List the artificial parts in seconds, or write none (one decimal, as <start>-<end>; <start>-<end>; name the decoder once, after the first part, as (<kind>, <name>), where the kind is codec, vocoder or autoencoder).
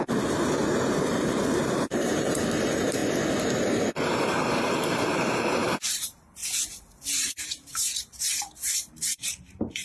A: 0.0-3.0 (vocoder, BigVGAN v2); 4.1-6.4; 7.1-9.8